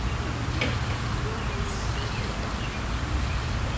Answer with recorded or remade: recorded